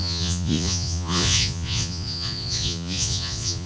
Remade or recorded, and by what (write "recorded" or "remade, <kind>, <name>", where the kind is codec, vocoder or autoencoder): remade, vocoder, Vocos